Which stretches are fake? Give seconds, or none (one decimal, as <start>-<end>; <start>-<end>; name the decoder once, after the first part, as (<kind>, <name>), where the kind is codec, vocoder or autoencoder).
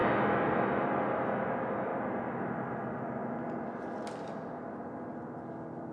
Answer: 0.0-1.0 (vocoder, BigVGAN v2); 1.9-2.7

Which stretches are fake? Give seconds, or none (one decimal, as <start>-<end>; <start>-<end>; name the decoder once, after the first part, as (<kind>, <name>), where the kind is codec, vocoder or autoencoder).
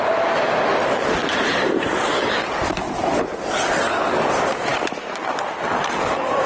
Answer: 0.7-1.8 (vocoder, BigVGAN v2); 2.7-3.2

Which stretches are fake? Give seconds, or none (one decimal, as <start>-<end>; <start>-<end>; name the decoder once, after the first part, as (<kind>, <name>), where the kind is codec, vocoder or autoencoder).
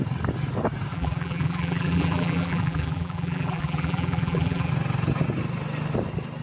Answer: 0.9-4.7 (vocoder, BigVGAN v2)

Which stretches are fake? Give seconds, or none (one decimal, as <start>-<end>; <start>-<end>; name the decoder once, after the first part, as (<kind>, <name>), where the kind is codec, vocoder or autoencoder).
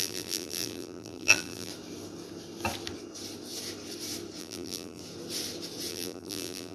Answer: 0.0-1.7 (vocoder, BigVGAN v2); 4.4-5.0; 5.9-6.7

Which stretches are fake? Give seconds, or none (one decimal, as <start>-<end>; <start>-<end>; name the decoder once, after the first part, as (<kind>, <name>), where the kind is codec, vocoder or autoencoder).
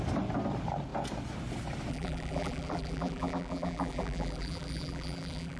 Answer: 1.9-5.6 (vocoder, BigVGAN v2)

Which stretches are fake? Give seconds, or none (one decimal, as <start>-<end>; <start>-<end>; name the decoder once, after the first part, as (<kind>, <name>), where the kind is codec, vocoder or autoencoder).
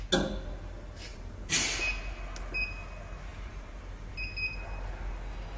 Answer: 1.1-1.8 (vocoder, BigVGAN v2); 3.3-4.1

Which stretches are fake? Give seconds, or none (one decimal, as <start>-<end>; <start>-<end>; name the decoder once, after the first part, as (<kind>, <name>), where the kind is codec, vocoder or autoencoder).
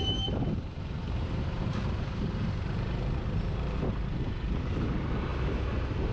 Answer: 0.0-6.1 (vocoder, BigVGAN v2)